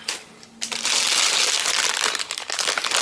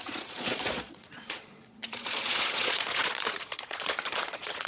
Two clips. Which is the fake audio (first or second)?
second